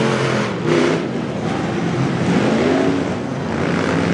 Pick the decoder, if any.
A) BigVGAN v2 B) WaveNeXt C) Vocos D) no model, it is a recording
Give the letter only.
D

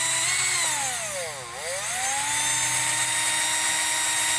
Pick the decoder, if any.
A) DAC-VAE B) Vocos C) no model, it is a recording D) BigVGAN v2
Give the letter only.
C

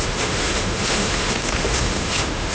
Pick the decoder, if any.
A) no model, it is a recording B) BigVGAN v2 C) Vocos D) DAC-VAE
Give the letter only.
D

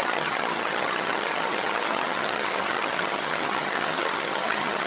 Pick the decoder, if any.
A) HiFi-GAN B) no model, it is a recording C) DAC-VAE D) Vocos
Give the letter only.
A